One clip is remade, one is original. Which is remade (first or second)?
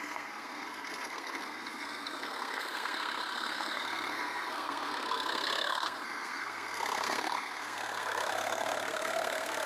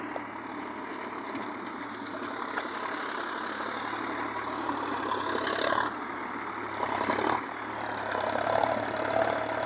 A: first